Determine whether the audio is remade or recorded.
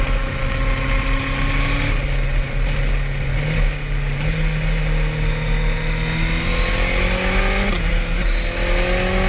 recorded